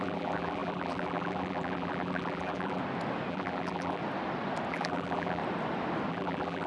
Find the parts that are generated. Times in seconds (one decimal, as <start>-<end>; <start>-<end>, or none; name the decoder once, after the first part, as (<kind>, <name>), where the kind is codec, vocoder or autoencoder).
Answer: 0.0-2.8 (vocoder, BigVGAN v2); 3.3-4.0; 4.7-5.4; 6.1-6.7